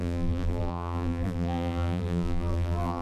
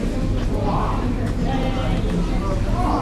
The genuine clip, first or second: second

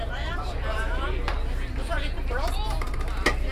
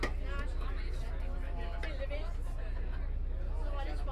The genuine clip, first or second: second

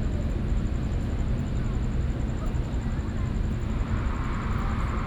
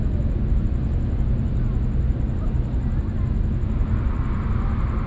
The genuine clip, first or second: second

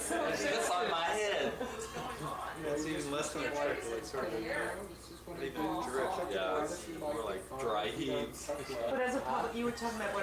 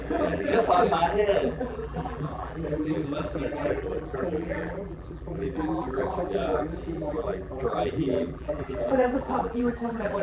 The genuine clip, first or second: first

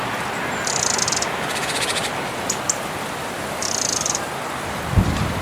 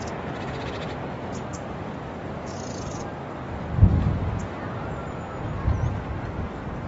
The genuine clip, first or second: second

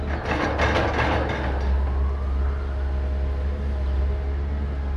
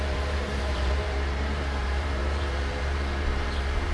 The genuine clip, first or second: first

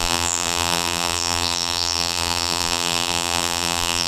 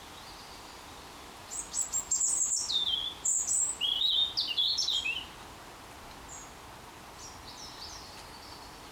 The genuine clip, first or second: second